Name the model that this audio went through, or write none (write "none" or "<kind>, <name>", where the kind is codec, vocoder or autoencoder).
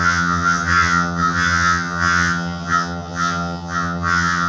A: vocoder, HiFi-GAN